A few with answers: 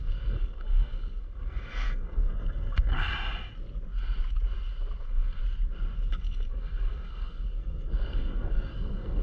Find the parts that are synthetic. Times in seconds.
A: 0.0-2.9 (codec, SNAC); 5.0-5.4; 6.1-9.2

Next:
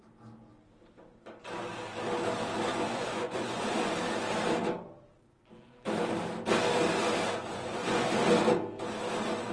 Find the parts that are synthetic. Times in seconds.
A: 2.7-3.9 (vocoder, Vocos); 7.4-8.1

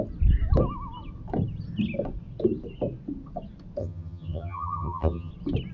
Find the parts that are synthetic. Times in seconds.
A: 3.8-5.3 (vocoder, HiFi-GAN)

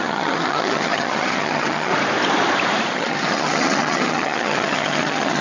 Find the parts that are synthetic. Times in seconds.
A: 0.0-1.9 (vocoder, HiFi-GAN); 2.9-5.4